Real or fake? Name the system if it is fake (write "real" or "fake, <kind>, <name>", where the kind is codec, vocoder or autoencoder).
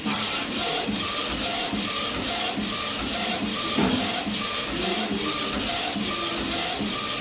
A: real